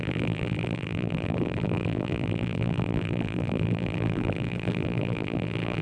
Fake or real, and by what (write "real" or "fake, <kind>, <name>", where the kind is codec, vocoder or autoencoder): fake, vocoder, BigVGAN v2